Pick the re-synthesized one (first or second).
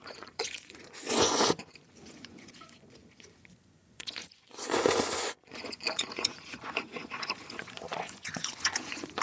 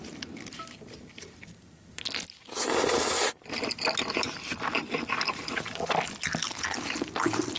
first